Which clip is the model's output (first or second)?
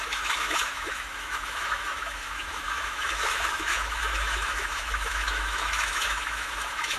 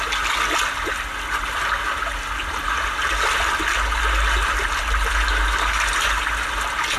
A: first